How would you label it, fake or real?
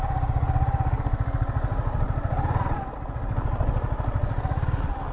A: real